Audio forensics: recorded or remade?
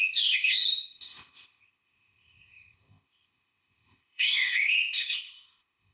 remade